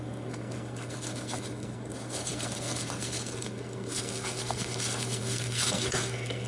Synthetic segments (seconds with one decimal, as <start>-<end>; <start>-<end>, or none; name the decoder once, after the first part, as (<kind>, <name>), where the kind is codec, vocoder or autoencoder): 0.0-6.5 (codec, SNAC)